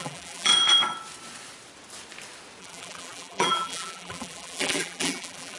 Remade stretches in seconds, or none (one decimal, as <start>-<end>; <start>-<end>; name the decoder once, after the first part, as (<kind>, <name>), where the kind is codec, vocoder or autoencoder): 0.0-0.5 (vocoder, BigVGAN v2); 2.6-5.6